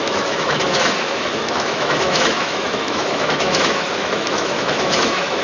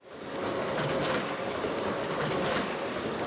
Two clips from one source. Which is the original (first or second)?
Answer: second